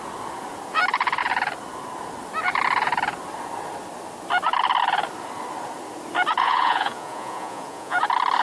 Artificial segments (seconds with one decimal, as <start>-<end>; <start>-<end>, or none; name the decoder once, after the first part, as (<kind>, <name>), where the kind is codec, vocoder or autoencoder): 6.4-8.0 (vocoder, Vocos)

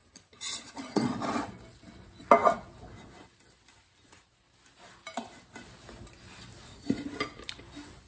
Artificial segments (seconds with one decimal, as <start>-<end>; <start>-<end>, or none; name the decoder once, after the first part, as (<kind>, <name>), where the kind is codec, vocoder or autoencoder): 0.0-1.5 (vocoder, Vocos)

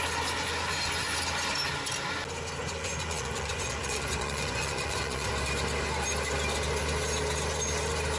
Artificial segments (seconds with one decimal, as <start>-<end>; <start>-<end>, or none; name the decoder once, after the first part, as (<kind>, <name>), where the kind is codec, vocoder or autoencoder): 2.6-5.3 (vocoder, Vocos)

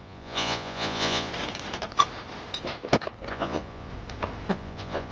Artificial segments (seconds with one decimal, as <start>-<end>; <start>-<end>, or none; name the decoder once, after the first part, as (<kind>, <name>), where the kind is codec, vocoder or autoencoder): 0.0-1.3 (vocoder, Vocos); 3.3-3.9; 4.5-5.1